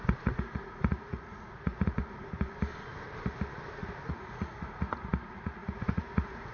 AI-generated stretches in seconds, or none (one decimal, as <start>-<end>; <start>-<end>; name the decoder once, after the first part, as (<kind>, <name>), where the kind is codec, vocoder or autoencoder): 0.0-2.0 (vocoder, Vocos); 4.1-6.5